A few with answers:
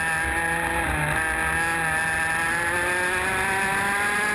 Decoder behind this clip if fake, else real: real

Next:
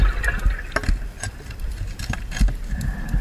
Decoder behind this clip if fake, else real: real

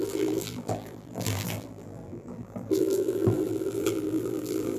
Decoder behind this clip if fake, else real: fake, vocoder, BigVGAN v2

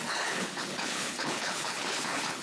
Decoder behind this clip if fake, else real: fake, codec, HILCodec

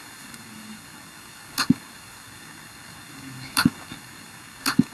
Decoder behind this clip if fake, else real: fake, codec, DAC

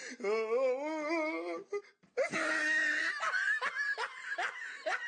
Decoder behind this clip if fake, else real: real